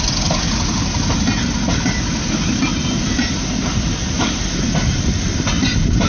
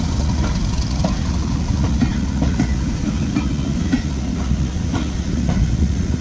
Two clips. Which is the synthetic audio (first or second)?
second